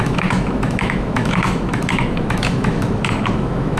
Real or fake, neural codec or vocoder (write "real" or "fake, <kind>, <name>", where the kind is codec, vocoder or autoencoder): fake, autoencoder, DAC-VAE